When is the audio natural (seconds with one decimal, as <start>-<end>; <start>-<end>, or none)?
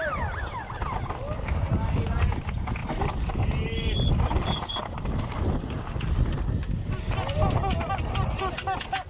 0.0-9.1